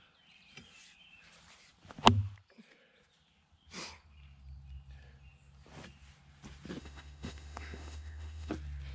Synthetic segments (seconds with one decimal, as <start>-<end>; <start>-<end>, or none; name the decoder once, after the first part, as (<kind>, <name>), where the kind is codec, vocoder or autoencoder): 6.8-8.5 (autoencoder, DAC-VAE)